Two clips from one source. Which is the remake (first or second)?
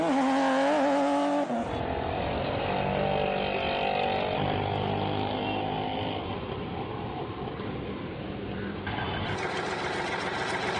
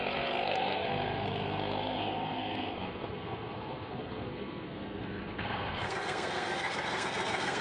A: second